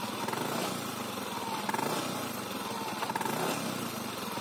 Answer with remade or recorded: recorded